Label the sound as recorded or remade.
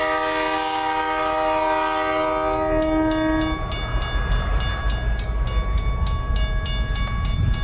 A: recorded